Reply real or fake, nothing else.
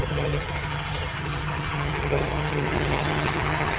fake